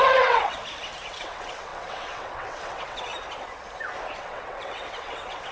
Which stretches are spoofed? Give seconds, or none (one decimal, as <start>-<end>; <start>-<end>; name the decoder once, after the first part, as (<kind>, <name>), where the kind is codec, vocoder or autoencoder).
0.0-0.6 (vocoder, WaveNeXt); 1.1-3.1; 4.2-5.5